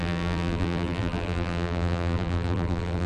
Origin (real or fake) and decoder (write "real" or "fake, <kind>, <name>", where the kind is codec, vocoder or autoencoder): fake, vocoder, BigVGAN v2